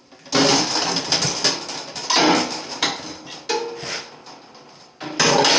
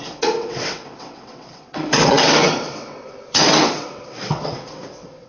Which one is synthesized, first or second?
second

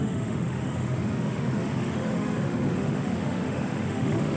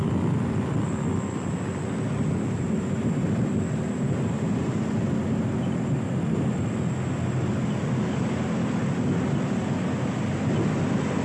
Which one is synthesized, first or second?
first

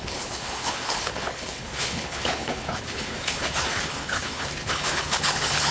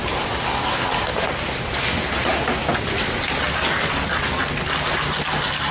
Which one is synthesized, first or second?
first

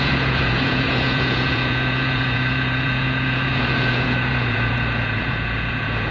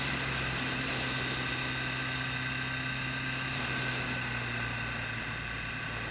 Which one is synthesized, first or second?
first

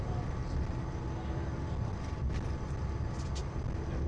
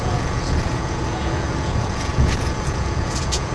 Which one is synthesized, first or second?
second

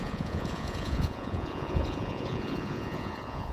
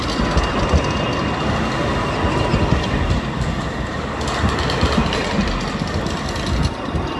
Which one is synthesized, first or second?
first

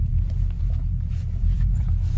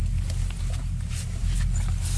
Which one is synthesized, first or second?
first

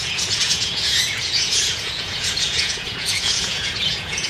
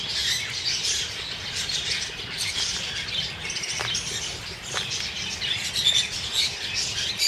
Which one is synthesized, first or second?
first